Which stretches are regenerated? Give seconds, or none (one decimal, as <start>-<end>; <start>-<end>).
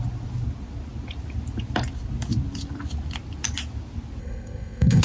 4.2-5.0